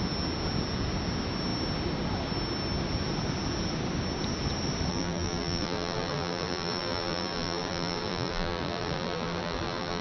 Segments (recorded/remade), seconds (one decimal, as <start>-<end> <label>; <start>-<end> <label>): 0.0-4.9 recorded; 4.9-10.0 remade